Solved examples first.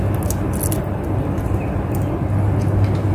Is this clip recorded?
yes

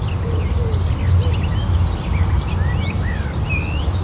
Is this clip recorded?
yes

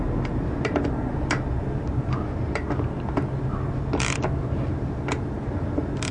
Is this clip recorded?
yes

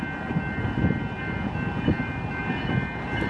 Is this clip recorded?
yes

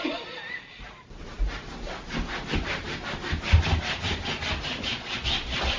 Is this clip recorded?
yes